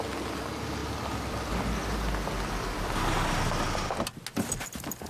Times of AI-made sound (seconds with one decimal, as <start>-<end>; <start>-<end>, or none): none